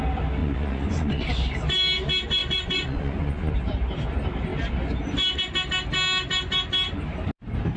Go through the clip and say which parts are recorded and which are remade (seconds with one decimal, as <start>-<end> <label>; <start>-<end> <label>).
0.0-0.4 recorded; 0.4-1.2 remade; 1.2-2.4 recorded; 2.4-3.5 remade; 3.5-7.8 recorded